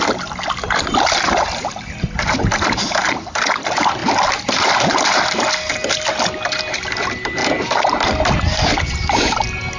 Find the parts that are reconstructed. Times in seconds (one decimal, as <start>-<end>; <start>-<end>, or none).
none